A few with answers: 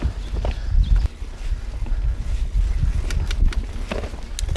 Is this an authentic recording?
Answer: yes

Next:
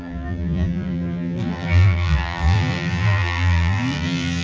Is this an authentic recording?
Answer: no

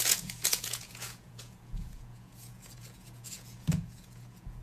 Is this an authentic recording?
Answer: no